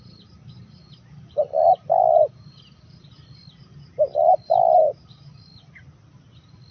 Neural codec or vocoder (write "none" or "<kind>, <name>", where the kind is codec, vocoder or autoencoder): none